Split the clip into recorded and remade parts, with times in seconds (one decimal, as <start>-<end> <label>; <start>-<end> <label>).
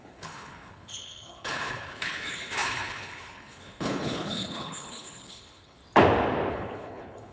0.0-5.8 remade; 5.8-6.5 recorded; 6.5-7.3 remade